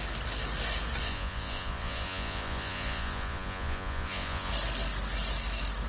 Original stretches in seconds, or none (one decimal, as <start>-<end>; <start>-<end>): 0.0-1.0; 4.5-5.9